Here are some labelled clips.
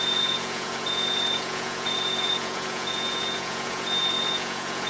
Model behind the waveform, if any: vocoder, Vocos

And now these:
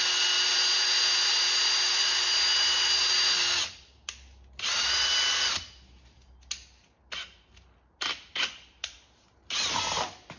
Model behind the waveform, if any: none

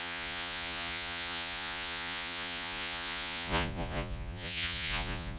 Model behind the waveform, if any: vocoder, Vocos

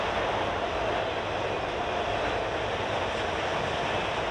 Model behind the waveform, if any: none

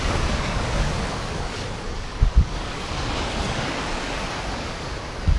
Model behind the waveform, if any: codec, DAC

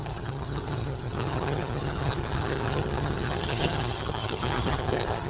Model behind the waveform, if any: vocoder, HiFi-GAN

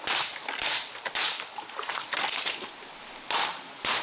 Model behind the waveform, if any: none